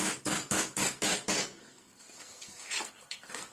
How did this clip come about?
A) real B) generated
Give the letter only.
B